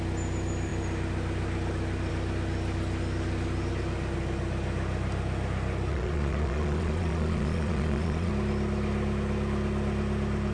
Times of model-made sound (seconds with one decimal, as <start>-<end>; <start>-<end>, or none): 5.9-8.3

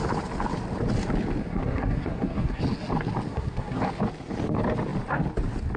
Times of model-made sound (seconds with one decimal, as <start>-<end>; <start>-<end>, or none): 1.4-2.6; 3.3-3.8